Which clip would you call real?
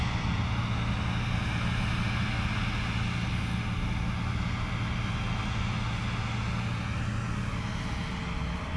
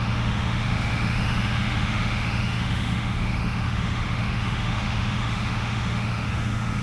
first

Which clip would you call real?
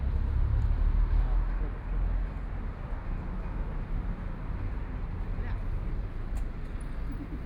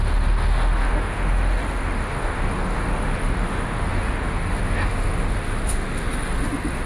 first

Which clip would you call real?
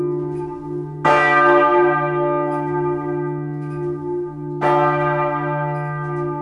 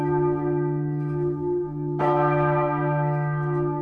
first